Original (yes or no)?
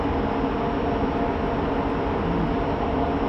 yes